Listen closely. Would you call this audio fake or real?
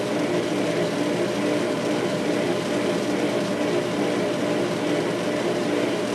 real